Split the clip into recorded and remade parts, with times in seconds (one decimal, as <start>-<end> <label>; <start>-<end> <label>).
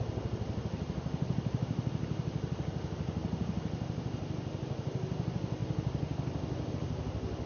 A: 0.0-7.5 recorded